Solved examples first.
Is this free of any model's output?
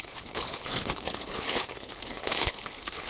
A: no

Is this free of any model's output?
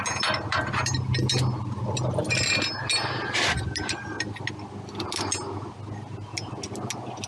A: yes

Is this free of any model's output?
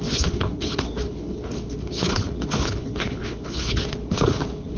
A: no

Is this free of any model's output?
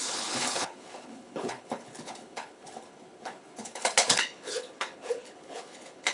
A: no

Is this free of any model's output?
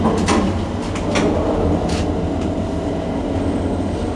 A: yes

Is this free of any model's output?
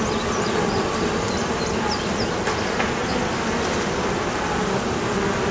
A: yes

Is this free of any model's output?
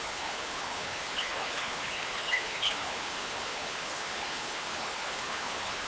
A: no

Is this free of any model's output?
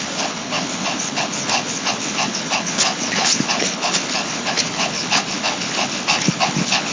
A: no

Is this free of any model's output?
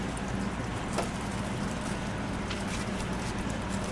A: yes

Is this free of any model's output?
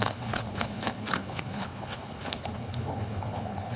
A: no